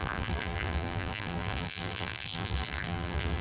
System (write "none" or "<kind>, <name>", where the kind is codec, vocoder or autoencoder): vocoder, BigVGAN v2